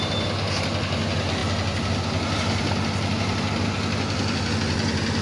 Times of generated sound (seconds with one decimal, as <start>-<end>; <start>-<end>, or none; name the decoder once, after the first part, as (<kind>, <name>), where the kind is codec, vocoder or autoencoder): none